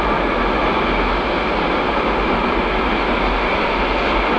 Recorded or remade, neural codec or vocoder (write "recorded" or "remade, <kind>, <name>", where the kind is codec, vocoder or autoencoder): recorded